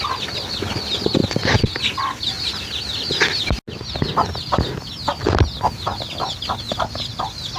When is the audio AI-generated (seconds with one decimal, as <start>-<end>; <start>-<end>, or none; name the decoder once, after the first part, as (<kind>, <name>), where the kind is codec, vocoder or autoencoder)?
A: none